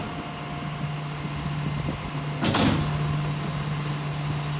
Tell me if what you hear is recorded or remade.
recorded